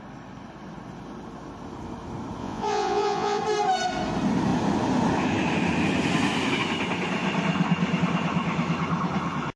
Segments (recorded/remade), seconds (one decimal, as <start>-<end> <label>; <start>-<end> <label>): 0.0-2.4 recorded; 2.4-3.4 remade; 3.4-9.6 recorded